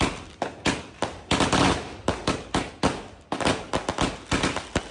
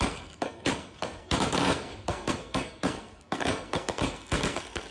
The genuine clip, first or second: first